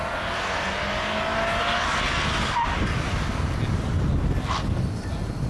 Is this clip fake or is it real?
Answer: real